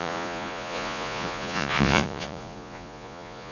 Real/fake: fake